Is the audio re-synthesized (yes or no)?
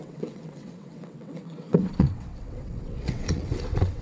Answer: yes